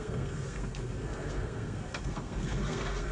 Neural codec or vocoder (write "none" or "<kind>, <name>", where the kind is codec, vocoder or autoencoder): codec, SNAC